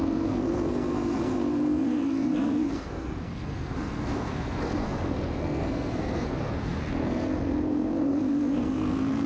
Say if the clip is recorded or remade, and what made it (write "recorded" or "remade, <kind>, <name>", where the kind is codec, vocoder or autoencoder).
remade, codec, SNAC